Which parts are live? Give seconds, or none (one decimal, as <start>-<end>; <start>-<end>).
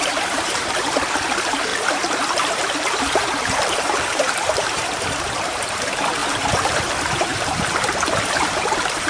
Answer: none